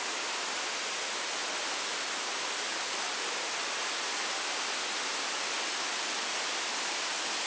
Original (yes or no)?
yes